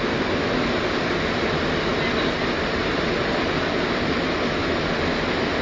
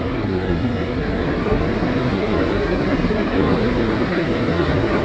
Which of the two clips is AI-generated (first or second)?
second